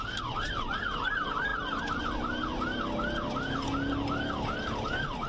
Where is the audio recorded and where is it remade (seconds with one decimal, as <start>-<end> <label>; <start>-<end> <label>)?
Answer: 0.0-5.3 recorded